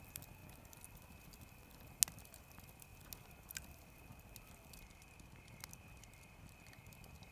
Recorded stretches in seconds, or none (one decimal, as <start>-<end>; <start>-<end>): 0.0-0.4; 1.1-2.9; 6.7-7.3